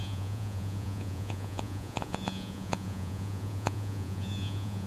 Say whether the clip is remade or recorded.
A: remade